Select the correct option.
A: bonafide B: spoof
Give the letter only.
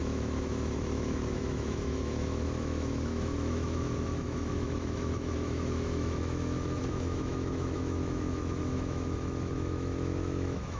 B